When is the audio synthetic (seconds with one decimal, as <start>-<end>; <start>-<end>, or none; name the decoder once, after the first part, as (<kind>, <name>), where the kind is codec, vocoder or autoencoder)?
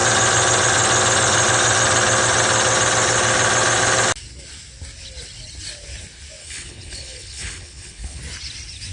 6.4-8.2 (codec, HILCodec)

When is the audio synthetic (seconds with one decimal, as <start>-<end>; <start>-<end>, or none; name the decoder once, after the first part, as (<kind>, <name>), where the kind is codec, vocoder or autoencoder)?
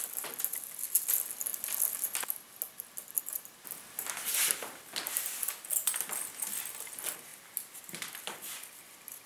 none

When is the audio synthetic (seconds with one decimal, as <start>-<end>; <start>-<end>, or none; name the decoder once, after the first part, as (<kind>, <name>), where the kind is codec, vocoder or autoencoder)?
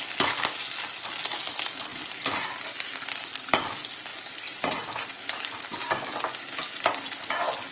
4.1-5.4 (vocoder, BigVGAN v2)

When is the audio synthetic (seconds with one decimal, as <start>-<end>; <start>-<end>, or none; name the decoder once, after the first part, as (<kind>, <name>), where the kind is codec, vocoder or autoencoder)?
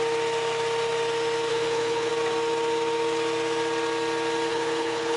1.5-2.1 (codec, HILCodec); 4.5-5.2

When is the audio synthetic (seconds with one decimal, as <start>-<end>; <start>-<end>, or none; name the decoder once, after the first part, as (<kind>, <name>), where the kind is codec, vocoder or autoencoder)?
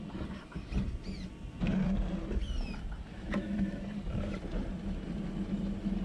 3.1-3.8 (autoencoder, DAC-VAE)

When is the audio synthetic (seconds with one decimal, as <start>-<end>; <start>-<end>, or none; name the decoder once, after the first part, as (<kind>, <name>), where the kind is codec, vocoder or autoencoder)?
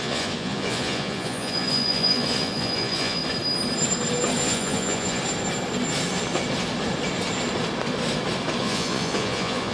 0.0-3.2 (vocoder, Vocos); 4.4-5.2; 8.6-9.7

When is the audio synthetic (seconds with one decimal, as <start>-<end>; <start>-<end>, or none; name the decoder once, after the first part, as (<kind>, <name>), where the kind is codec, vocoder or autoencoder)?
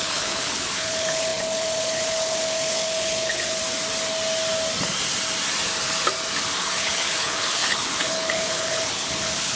0.0-3.6 (codec, HILCodec); 6.6-9.6